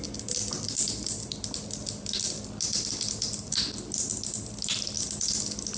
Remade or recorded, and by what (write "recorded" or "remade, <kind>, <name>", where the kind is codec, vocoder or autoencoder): recorded